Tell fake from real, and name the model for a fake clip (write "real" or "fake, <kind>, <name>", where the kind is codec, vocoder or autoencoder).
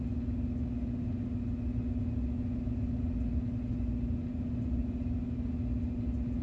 real